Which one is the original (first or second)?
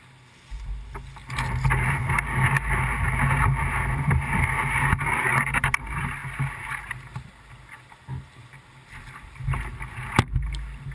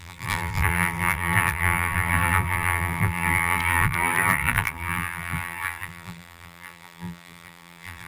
first